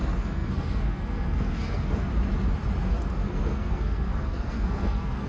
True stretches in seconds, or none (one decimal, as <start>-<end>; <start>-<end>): 2.1-2.9